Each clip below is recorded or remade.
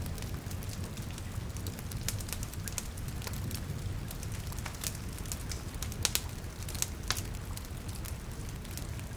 recorded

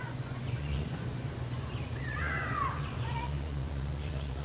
remade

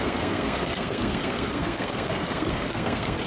remade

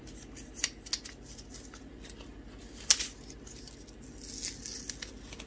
recorded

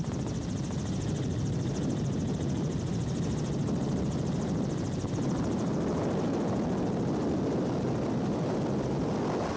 recorded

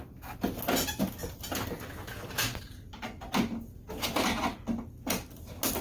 recorded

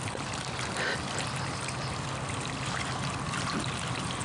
recorded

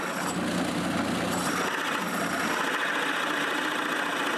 recorded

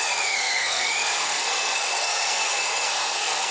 remade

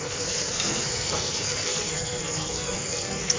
remade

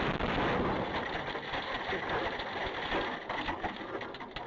recorded